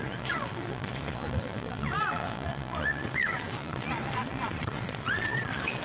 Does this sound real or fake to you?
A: fake